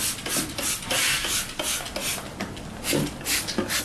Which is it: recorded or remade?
recorded